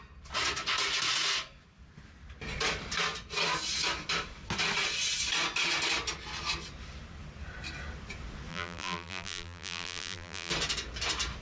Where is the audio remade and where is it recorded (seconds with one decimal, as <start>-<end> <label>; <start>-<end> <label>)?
0.0-8.5 recorded; 8.5-10.5 remade; 10.5-11.4 recorded